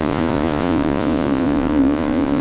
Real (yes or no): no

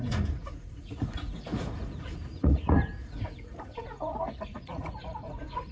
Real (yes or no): no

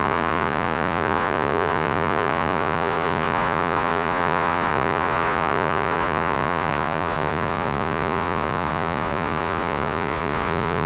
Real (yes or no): no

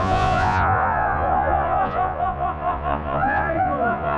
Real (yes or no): no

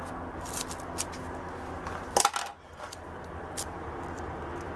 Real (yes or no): yes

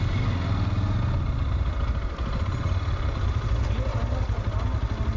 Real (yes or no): yes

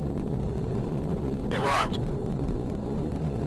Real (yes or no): no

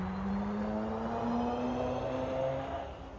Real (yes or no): yes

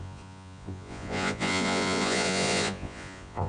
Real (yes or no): no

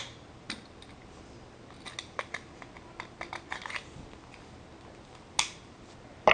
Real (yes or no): yes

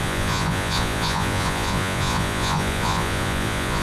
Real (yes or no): no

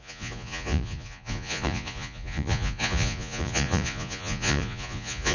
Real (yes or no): no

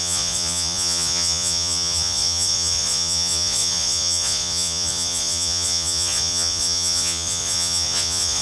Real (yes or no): no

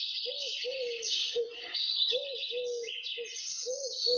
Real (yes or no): yes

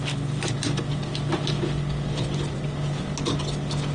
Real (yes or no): yes